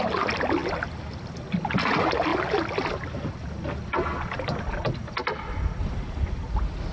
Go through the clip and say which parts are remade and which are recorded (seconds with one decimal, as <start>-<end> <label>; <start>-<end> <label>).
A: 0.0-6.9 recorded